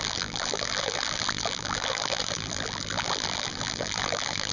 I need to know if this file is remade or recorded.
remade